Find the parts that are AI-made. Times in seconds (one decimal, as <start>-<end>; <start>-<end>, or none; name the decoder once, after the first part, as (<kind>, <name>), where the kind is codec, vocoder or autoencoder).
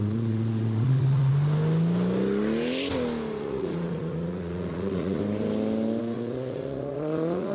0.0-1.3 (vocoder, Vocos); 3.4-5.2; 6.0-7.5